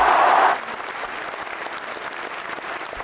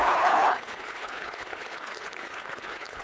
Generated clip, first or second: second